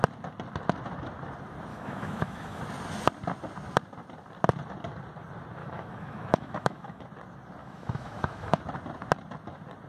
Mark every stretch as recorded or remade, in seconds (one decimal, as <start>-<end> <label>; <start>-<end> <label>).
0.0-1.7 recorded; 1.7-2.6 remade; 2.6-5.6 recorded; 5.6-7.0 remade; 7.0-7.6 recorded; 7.6-8.6 remade; 8.6-9.9 recorded